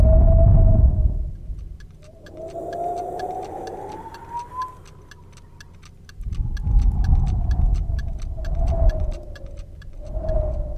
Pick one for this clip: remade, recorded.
recorded